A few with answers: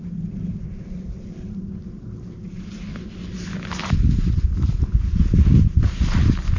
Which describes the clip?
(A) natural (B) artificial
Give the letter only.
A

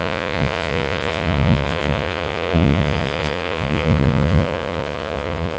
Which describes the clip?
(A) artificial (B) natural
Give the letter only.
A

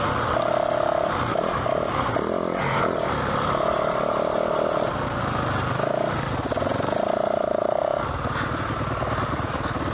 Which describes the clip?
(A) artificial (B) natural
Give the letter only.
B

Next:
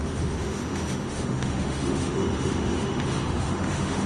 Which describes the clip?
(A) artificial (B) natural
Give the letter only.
A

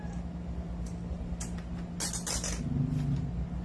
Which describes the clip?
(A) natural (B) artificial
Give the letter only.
A